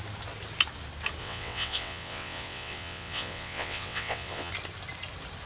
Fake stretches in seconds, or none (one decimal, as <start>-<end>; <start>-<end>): 1.2-4.5